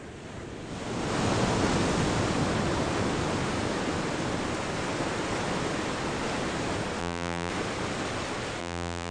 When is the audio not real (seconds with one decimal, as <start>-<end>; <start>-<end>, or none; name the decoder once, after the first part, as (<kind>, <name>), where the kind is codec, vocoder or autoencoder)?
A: 7.0-7.5 (vocoder, BigVGAN v2); 8.6-9.1